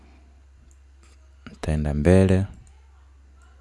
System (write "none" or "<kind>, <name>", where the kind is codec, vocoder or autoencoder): none